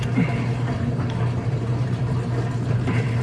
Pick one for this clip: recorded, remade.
remade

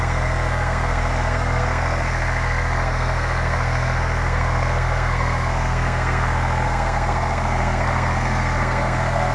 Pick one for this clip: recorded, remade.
remade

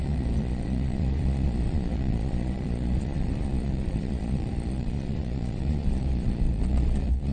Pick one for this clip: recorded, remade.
remade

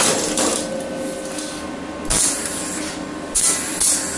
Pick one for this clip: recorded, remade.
recorded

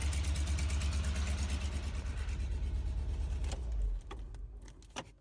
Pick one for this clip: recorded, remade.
recorded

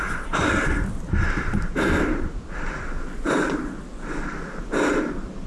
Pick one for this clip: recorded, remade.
recorded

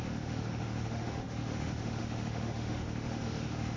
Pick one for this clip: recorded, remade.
remade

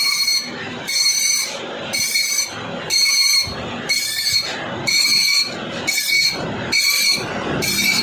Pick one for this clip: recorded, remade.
remade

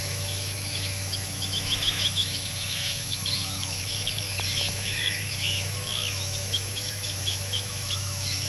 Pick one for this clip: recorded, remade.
remade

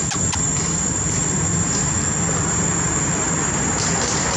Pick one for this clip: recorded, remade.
recorded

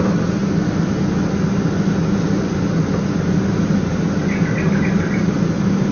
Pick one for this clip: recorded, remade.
recorded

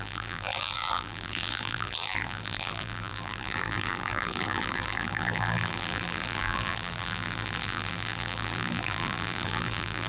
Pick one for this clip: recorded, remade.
remade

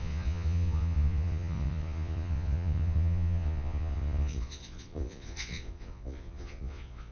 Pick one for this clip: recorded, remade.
remade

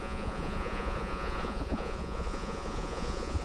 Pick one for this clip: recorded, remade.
remade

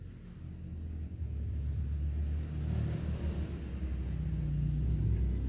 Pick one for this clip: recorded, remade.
recorded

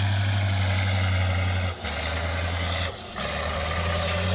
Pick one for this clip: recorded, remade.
recorded